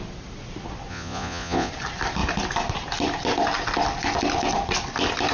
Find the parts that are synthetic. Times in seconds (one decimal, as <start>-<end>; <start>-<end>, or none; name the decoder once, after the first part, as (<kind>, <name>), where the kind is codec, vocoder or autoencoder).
0.9-1.7 (vocoder, Vocos)